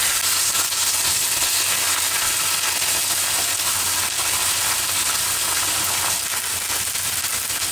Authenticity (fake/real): real